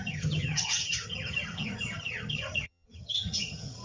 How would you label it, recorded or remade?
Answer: remade